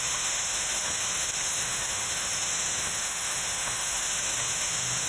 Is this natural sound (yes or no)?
no